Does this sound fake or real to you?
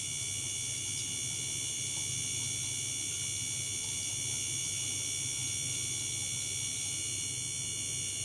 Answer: real